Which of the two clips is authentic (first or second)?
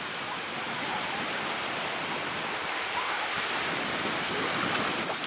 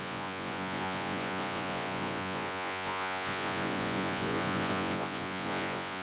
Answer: first